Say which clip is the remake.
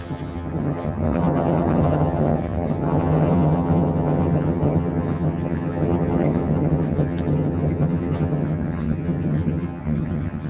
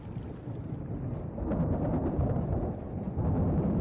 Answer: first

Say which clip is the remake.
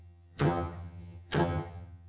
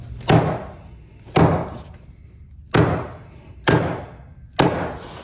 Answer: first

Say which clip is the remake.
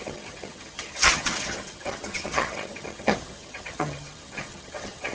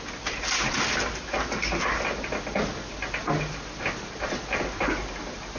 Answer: first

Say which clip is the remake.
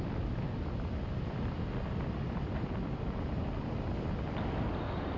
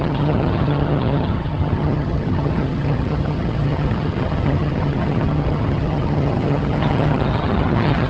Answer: second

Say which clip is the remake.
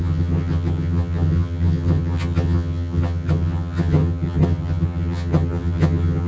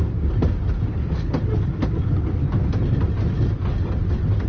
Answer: first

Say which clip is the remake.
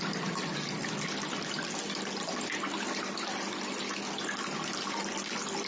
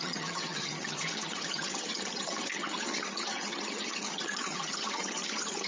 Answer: second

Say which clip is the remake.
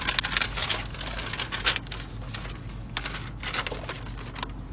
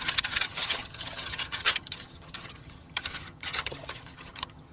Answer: second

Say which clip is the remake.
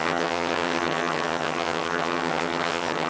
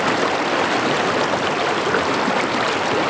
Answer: first